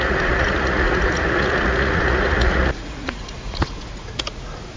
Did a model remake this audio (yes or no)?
yes